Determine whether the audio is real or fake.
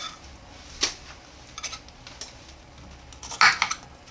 real